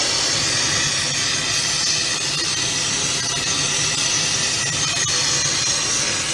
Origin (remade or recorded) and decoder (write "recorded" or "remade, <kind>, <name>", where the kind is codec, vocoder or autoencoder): recorded